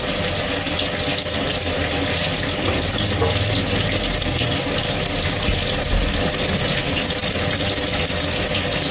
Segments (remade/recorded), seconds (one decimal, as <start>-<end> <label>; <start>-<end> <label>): 0.0-1.1 recorded; 1.1-5.3 remade; 5.3-8.9 recorded